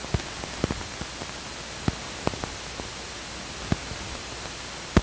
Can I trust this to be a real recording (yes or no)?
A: yes